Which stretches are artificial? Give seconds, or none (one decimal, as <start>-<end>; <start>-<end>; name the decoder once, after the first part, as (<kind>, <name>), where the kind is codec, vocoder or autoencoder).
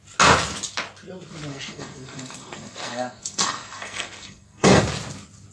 1.5-4.8 (codec, SNAC)